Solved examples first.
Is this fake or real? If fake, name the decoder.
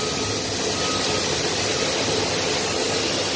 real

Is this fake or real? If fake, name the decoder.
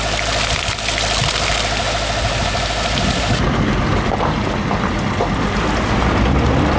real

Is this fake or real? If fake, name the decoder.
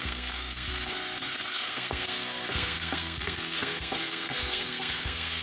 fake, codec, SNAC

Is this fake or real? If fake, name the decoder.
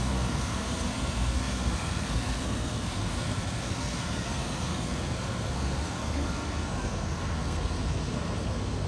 fake, codec, SNAC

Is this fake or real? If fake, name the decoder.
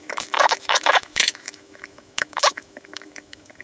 fake, autoencoder, DAC-VAE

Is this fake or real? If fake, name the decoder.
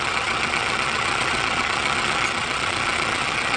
fake, vocoder, Vocos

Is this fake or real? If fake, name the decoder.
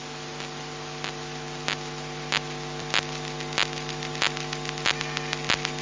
real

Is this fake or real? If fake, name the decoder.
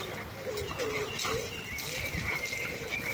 real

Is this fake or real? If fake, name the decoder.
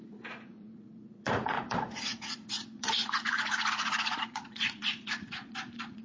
fake, vocoder, Vocos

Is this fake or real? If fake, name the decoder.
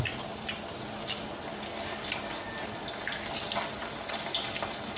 real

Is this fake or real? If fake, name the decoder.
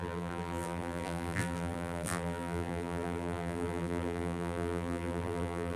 fake, vocoder, BigVGAN v2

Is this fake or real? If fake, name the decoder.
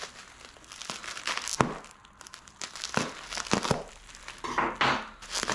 real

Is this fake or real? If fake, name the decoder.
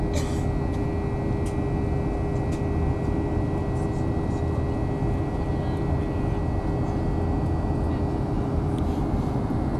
real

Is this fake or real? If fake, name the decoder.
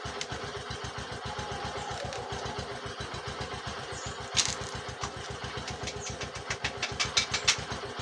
real